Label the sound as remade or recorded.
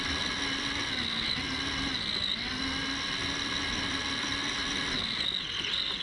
recorded